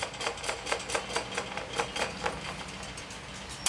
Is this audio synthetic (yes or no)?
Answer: no